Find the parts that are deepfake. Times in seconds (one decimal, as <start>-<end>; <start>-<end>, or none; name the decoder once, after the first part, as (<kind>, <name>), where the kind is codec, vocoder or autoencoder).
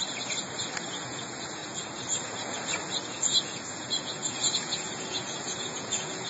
0.9-1.6 (vocoder, Vocos); 3.1-6.3